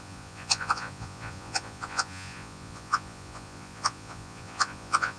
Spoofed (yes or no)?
yes